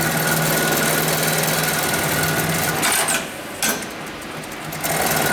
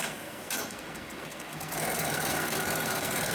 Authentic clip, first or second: first